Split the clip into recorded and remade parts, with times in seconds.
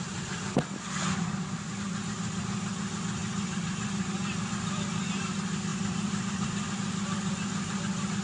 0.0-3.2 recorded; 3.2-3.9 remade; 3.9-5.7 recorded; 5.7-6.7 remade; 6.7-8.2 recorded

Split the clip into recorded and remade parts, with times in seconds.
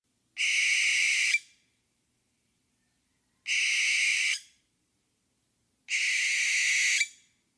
0.0-0.9 recorded; 0.9-3.2 remade; 3.2-4.1 recorded; 4.1-5.4 remade; 5.4-7.6 recorded